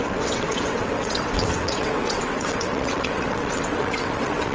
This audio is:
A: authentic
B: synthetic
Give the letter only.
B